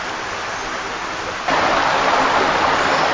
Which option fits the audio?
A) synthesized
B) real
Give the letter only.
B